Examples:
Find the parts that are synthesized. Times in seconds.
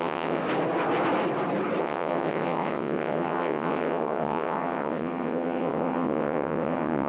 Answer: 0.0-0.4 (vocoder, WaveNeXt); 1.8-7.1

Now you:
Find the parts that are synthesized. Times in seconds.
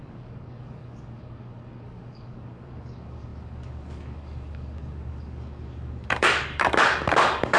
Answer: 0.0-7.6 (codec, DAC)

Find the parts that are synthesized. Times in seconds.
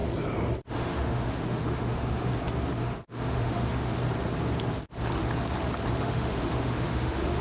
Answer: 0.7-2.3 (autoencoder, DAC-VAE); 2.8-3.9; 6.0-7.4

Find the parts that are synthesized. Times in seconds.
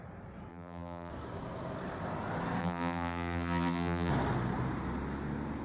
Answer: 0.5-1.1 (vocoder, BigVGAN v2); 2.6-4.1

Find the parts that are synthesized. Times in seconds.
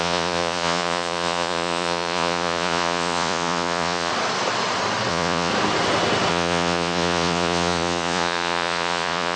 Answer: 0.0-4.1 (vocoder, Vocos); 5.1-5.5; 6.3-9.4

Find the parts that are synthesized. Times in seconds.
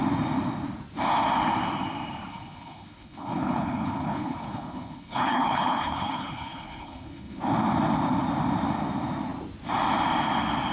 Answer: 2.3-7.4 (codec, HILCodec)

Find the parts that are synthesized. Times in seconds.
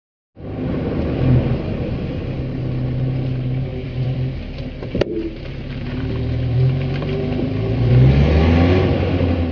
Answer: 3.7-8.4 (vocoder, BigVGAN v2)